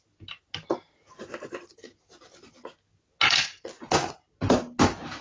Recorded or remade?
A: recorded